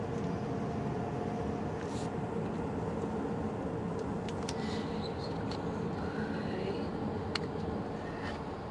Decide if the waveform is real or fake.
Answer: real